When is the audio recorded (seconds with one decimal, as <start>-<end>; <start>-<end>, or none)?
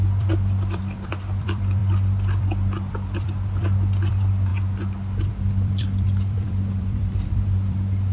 1.8-2.4; 4.5-5.3